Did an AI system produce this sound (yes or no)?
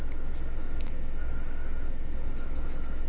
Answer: no